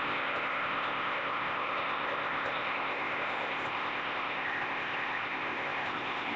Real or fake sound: fake